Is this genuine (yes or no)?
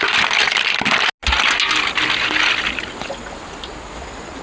yes